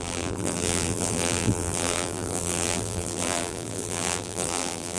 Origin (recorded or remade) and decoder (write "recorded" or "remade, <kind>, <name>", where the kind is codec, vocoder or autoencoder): remade, vocoder, BigVGAN v2